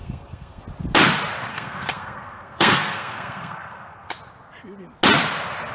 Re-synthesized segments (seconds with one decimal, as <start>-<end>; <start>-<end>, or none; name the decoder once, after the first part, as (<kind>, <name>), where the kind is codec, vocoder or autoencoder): 0.0-0.6 (codec, SNAC); 1.5-4.1